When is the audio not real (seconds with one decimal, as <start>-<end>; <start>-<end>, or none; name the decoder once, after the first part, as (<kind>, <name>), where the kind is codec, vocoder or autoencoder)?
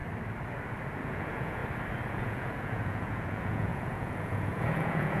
1.0-1.6 (vocoder, Vocos); 2.1-5.2